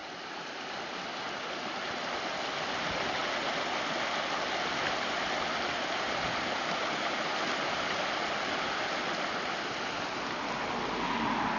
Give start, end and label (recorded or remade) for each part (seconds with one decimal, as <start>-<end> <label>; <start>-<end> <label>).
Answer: 0.0-11.6 recorded